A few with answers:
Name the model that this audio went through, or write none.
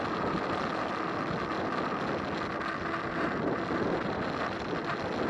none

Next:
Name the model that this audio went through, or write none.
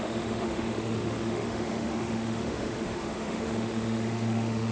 autoencoder, DAC-VAE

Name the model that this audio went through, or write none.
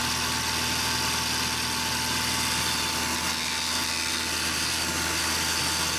none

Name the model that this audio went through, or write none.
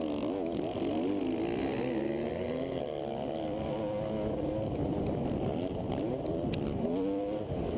none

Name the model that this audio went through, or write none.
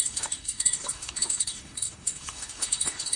autoencoder, DAC-VAE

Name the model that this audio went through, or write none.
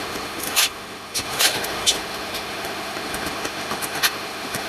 autoencoder, DAC-VAE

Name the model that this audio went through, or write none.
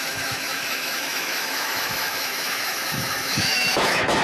autoencoder, DAC-VAE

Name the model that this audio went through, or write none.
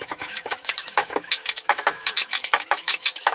autoencoder, DAC-VAE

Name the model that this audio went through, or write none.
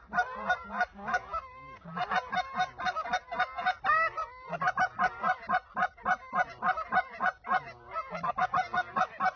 none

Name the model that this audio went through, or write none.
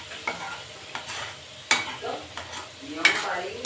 none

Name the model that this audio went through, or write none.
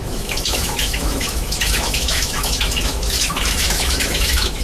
autoencoder, DAC-VAE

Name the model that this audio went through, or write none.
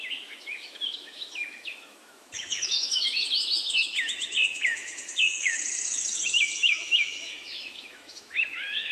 autoencoder, DAC-VAE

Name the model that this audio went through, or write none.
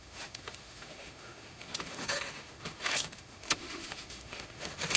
autoencoder, DAC-VAE